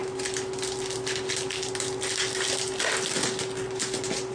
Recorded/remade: recorded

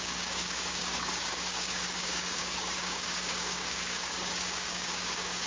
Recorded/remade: remade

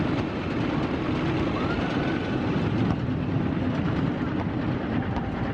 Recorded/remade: recorded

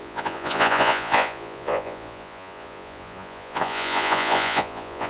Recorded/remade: remade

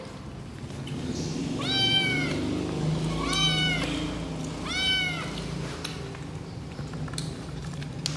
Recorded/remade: recorded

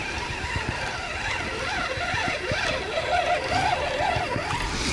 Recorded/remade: recorded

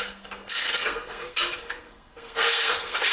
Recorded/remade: remade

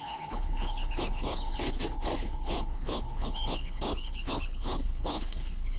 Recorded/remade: remade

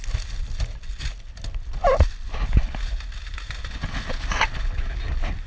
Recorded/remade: recorded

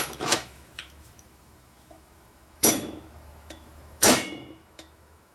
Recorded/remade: remade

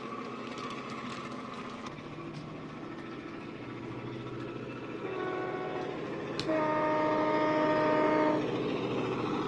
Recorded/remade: recorded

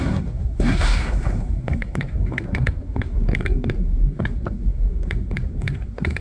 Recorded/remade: remade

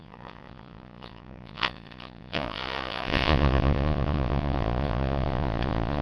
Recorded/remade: remade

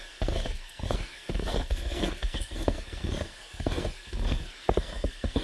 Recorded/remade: remade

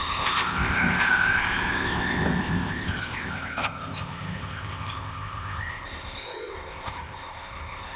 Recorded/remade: remade